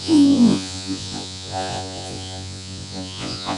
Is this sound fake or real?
fake